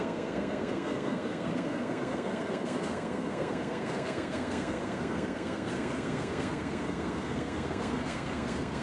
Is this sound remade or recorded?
remade